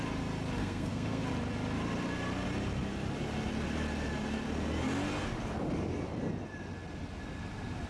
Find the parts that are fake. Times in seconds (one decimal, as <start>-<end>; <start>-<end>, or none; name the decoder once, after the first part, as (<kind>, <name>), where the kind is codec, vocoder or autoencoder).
0.6-1.2 (codec, SNAC)